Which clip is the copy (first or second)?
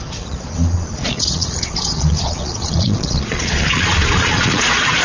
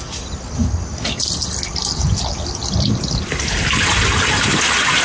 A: first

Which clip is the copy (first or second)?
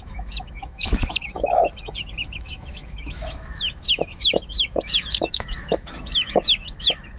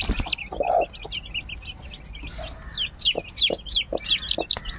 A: first